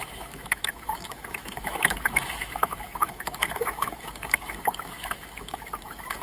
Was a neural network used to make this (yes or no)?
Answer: yes